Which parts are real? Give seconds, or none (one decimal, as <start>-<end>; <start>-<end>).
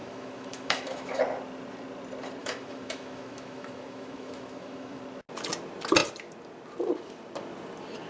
1.2-2.4; 5.0-8.1